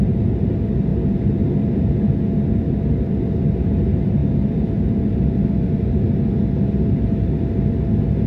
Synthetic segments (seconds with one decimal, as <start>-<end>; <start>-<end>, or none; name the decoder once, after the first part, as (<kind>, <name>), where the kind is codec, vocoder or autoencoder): none